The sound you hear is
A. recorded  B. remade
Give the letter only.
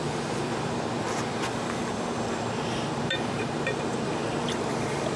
B